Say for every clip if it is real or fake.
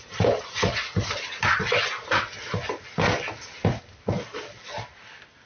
real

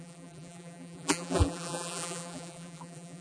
fake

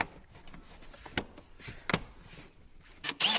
real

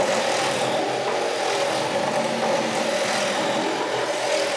real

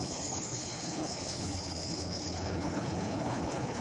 fake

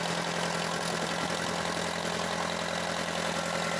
real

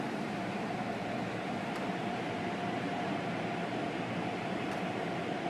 fake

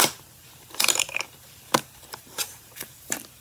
fake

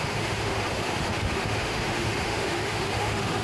fake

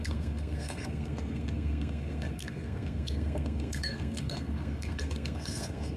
fake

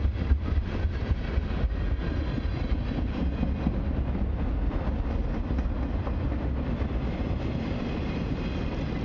real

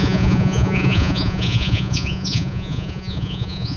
fake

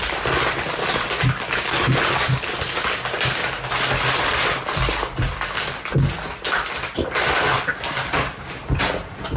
real